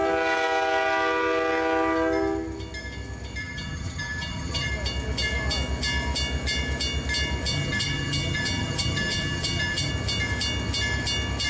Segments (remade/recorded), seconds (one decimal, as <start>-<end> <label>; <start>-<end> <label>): 0.0-3.4 recorded; 3.4-4.7 remade; 4.7-7.5 recorded; 7.5-9.9 remade; 9.9-11.5 recorded